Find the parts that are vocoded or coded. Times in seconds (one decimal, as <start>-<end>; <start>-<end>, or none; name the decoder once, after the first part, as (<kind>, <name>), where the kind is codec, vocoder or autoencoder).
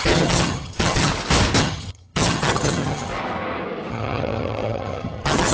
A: 0.0-1.1 (vocoder, HiFi-GAN); 1.6-3.1; 3.9-5.5